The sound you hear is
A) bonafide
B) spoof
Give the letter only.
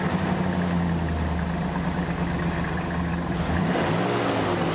A